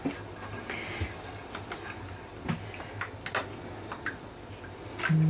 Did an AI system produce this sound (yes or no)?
no